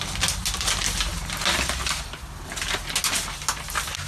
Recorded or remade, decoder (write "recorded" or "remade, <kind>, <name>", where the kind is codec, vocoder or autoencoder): recorded